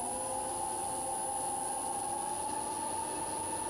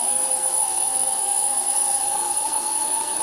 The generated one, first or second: second